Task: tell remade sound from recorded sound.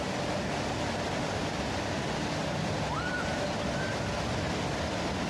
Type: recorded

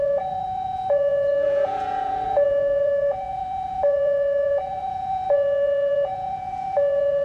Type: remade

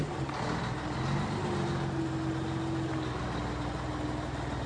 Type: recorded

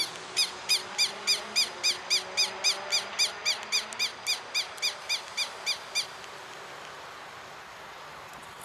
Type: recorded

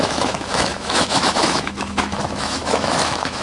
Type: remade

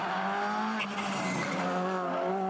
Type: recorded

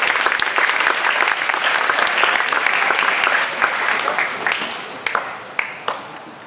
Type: recorded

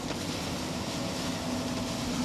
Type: recorded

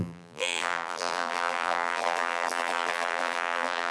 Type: remade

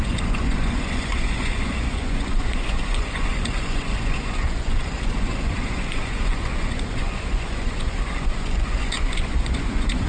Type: remade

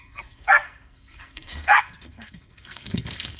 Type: remade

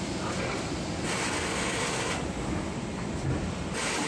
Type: recorded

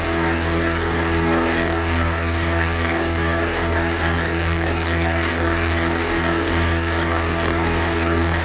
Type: remade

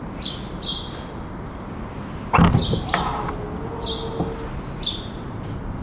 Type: recorded